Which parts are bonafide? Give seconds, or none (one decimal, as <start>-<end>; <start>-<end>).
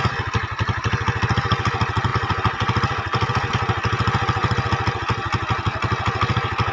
0.0-2.1; 3.5-4.4; 5.0-6.7